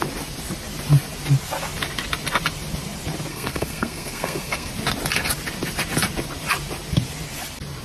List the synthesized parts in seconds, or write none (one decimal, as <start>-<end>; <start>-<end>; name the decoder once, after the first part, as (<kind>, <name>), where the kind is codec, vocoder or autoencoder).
3.3-4.7 (codec, SNAC)